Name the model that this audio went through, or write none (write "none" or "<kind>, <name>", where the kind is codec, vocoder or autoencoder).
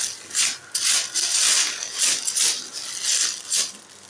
none